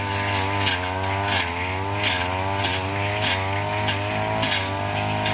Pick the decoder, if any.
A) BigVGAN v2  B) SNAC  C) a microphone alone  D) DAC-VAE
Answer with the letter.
C